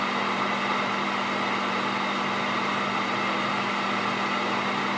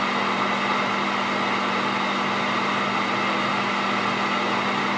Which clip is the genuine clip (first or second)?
second